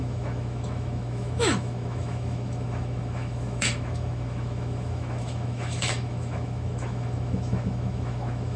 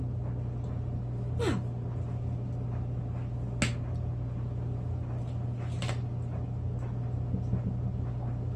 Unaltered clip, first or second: second